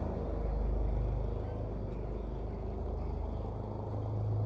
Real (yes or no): yes